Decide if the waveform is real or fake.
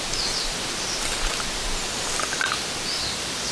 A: real